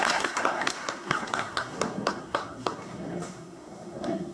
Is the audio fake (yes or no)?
yes